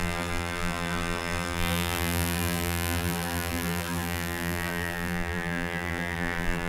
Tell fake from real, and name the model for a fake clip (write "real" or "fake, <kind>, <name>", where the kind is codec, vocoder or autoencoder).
fake, vocoder, BigVGAN v2